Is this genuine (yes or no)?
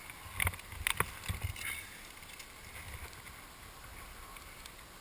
yes